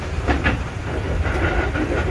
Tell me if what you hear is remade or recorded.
remade